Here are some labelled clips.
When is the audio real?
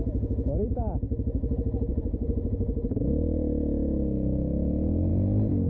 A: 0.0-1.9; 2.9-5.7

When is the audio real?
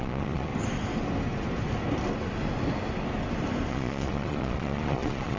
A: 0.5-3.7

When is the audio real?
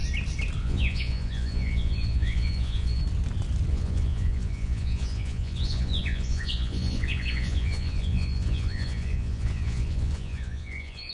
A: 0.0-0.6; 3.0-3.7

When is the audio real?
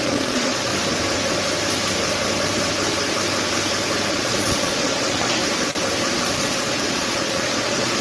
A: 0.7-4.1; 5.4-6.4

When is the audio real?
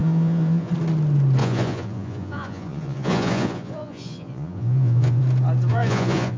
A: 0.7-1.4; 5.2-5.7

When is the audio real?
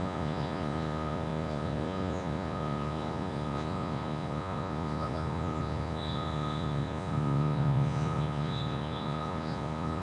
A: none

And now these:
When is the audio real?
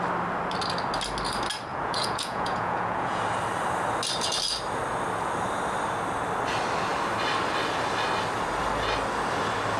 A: 0.0-1.7; 3.2-9.8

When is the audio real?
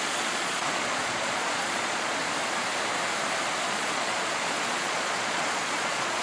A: 2.2-3.6